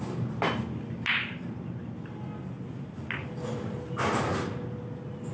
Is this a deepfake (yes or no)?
no